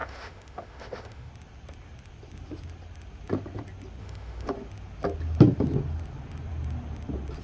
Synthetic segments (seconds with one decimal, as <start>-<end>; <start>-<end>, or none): 0.0-1.3; 4.0-4.5